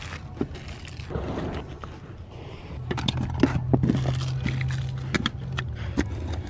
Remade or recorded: recorded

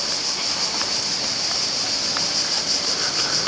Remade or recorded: recorded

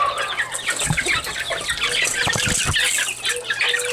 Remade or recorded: recorded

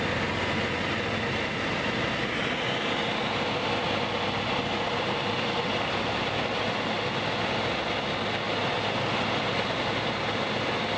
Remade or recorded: recorded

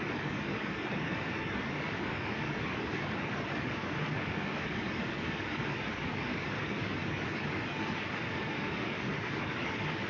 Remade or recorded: remade